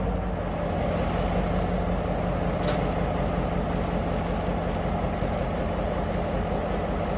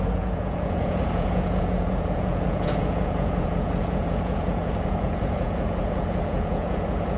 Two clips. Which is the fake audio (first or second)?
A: second